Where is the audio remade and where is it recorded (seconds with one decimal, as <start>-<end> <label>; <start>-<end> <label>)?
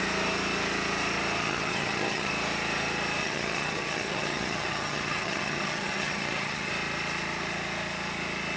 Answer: 0.0-1.4 recorded; 1.4-2.3 remade; 2.3-3.2 recorded; 3.2-6.7 remade; 6.7-8.6 recorded